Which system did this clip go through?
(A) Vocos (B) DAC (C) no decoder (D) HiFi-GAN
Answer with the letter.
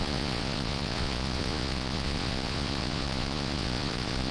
A